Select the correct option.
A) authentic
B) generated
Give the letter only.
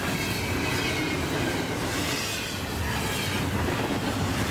A